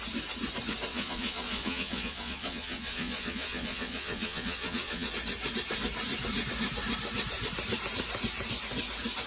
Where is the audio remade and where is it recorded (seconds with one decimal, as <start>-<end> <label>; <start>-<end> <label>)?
0.0-0.9 recorded; 0.9-5.1 remade; 5.1-9.3 recorded